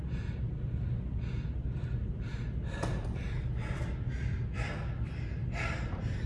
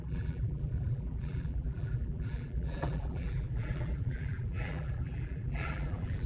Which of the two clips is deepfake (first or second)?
second